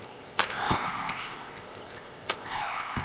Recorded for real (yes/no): no